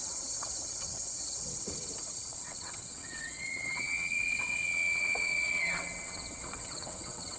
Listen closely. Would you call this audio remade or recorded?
remade